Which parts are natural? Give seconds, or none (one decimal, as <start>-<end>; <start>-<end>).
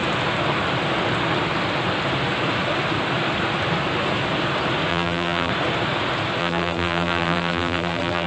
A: 0.0-4.9; 5.5-6.4